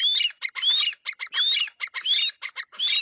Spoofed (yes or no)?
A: no